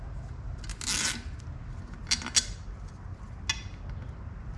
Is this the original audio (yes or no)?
yes